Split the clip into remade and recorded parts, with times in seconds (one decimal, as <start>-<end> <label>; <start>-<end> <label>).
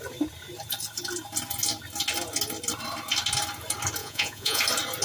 0.0-4.0 recorded; 4.0-4.6 remade; 4.6-5.0 recorded